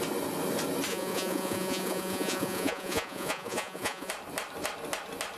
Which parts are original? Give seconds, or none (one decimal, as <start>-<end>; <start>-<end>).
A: 0.0-0.9; 4.1-5.4